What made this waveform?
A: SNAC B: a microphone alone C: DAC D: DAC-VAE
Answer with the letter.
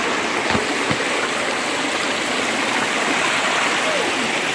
B